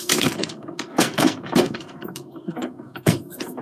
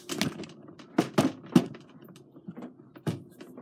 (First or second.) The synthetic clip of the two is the first